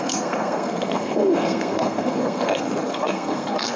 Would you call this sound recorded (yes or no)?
no